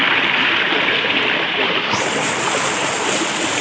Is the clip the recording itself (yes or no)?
yes